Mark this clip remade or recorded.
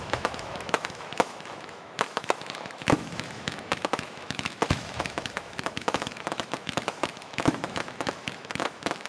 remade